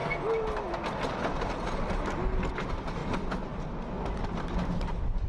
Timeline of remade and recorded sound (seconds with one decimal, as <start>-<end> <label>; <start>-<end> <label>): 0.0-5.3 recorded